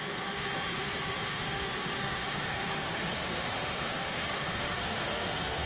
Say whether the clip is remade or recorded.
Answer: remade